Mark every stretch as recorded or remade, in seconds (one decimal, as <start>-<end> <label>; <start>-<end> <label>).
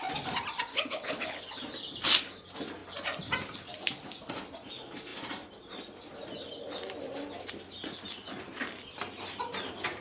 0.0-0.7 recorded; 0.7-1.4 remade; 1.4-10.0 recorded